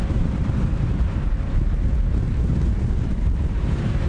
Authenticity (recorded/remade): remade